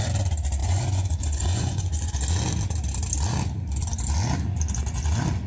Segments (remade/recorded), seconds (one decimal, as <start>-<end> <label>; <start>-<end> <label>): 0.0-0.6 recorded; 0.6-2.1 remade; 2.1-5.5 recorded